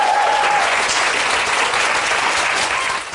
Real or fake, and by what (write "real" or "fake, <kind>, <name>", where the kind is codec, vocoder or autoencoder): fake, vocoder, Vocos